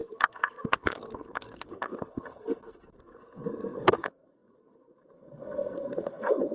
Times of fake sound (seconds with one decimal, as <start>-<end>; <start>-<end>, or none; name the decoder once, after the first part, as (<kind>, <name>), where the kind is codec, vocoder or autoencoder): 0.0-6.5 (codec, SNAC)